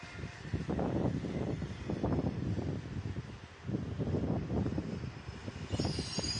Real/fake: real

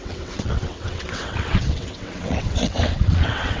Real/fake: fake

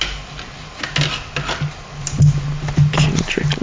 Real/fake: real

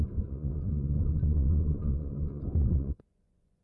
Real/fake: fake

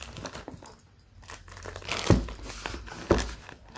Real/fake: real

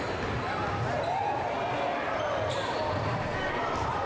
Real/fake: real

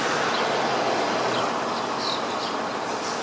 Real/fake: real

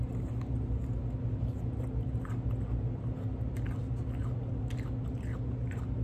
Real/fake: real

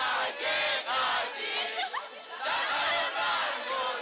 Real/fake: real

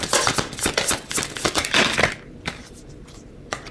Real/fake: fake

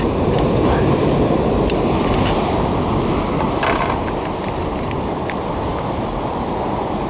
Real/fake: real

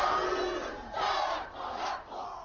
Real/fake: real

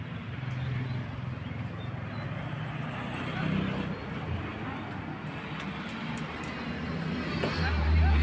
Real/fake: real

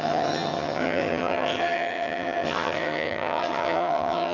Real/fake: fake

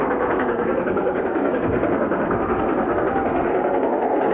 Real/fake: fake